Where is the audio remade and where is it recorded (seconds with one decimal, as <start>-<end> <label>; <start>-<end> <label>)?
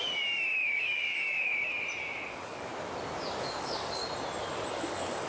0.0-1.5 remade; 1.5-2.3 recorded; 2.3-2.7 remade; 2.7-3.4 recorded; 3.4-4.0 remade; 4.0-4.7 recorded; 4.7-5.3 remade